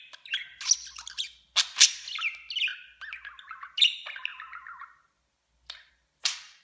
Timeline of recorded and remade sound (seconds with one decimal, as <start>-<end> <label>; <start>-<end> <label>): 0.0-6.6 recorded